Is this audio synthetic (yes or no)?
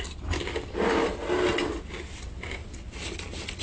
no